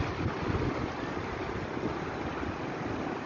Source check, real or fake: real